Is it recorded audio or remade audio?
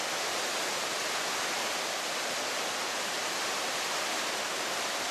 recorded